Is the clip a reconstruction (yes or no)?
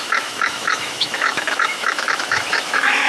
yes